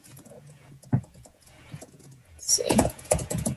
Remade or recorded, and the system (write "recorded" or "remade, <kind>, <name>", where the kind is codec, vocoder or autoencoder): remade, vocoder, Vocos